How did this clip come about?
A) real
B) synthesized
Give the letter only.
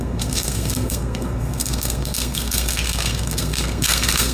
B